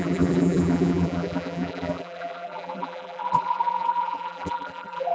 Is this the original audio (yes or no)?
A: no